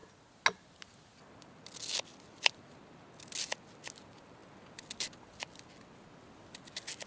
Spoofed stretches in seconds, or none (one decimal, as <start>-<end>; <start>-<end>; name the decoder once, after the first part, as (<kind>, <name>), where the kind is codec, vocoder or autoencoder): none